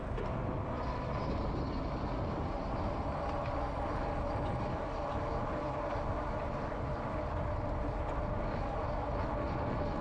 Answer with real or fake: real